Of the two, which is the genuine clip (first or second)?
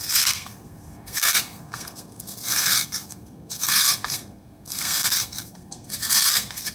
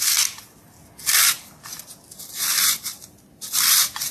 second